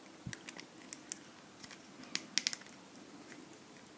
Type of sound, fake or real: real